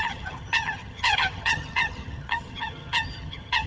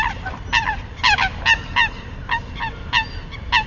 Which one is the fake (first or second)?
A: first